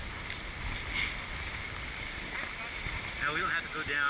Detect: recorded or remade recorded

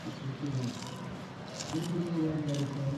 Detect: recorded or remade recorded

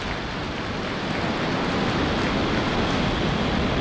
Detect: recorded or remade recorded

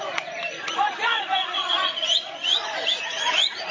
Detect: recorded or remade remade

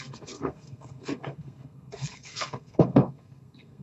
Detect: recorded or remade remade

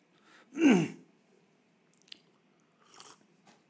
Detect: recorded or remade recorded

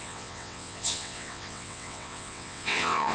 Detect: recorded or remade remade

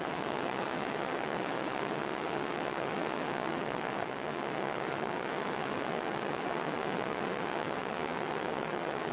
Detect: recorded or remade remade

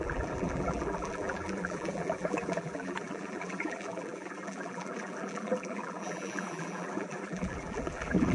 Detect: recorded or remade remade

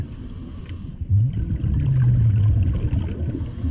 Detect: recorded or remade recorded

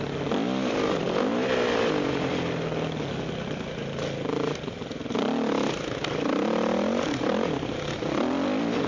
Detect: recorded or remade recorded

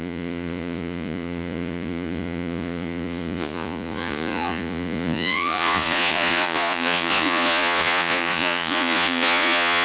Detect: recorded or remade remade